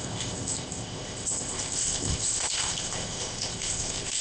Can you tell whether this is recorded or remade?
remade